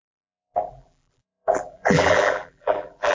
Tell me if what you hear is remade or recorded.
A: remade